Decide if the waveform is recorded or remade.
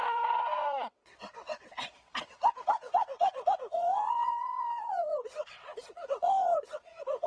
remade